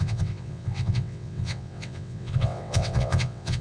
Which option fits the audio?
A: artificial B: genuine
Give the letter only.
A